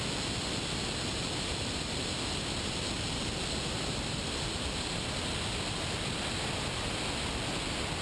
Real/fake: real